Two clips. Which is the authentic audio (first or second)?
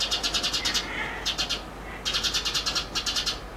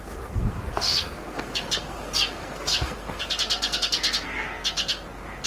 first